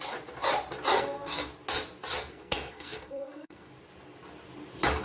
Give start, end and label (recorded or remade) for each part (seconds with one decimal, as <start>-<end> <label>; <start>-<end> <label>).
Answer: 0.0-0.9 recorded; 0.9-1.5 remade; 1.5-2.2 recorded; 2.2-3.7 remade; 3.7-5.0 recorded